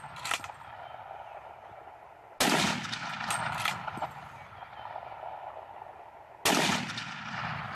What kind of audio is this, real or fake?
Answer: real